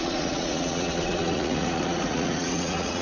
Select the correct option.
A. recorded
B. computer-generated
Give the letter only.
B